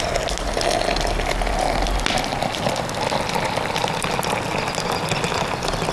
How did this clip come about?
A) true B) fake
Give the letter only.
A